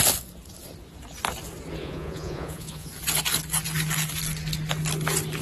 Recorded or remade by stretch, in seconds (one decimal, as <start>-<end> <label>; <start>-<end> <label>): 0.0-1.8 recorded; 1.8-2.9 remade; 2.9-5.4 recorded